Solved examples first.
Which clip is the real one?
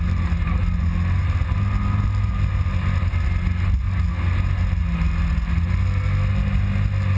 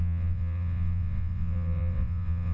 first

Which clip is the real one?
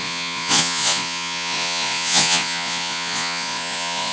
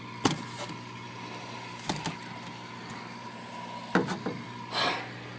second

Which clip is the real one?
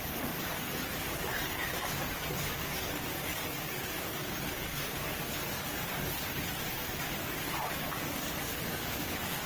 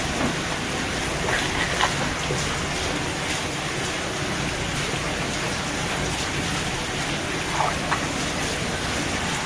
second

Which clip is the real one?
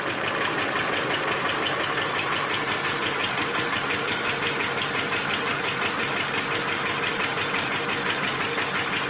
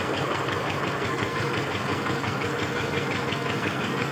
first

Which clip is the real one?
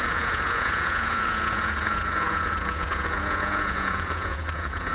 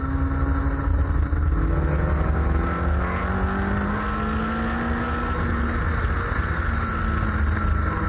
second